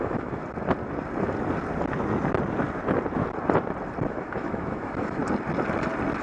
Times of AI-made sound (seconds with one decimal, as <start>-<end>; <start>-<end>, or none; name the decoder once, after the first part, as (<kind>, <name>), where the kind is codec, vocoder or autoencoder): 0.0-0.4 (autoencoder, DAC-VAE); 4.1-5.2